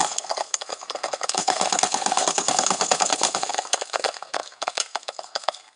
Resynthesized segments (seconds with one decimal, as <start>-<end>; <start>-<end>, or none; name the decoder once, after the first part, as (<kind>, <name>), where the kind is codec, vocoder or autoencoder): 0.0-5.8 (codec, SNAC)